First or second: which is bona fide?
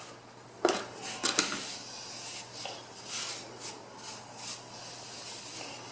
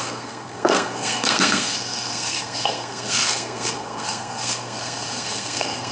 first